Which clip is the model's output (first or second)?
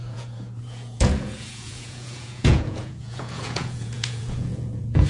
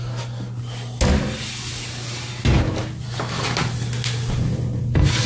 first